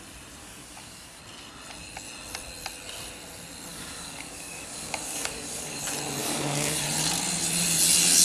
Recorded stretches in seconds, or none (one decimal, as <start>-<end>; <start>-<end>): 0.0-0.4; 1.2-3.7; 5.8-6.2; 6.8-8.2